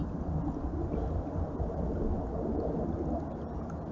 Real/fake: real